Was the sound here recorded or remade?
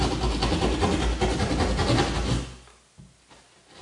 recorded